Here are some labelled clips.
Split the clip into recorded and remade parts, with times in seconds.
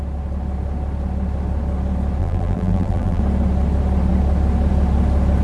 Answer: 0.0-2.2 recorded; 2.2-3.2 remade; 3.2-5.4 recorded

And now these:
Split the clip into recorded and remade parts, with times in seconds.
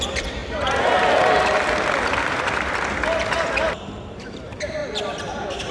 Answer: 0.0-0.4 remade; 0.4-3.8 recorded; 3.8-4.8 remade; 4.8-5.3 recorded; 5.3-5.7 remade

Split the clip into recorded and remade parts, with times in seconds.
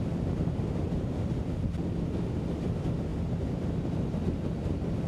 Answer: 0.0-5.1 recorded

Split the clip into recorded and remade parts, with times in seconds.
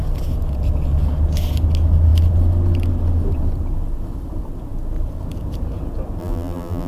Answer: 0.0-6.2 recorded; 6.2-6.9 remade